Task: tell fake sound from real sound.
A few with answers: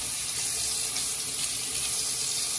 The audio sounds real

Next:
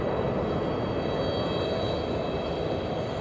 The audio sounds real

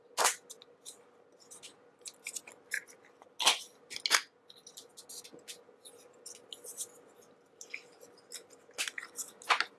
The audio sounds real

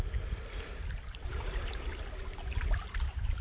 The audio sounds fake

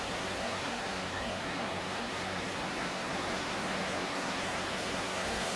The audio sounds fake